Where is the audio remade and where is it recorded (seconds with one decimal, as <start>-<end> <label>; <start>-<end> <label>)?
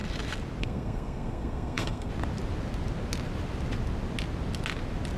0.0-0.6 recorded; 0.6-2.1 remade; 2.1-5.2 recorded